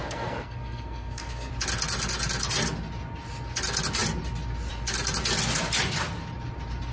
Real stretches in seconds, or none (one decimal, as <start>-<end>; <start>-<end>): 1.5-6.9